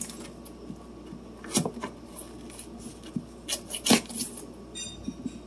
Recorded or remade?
recorded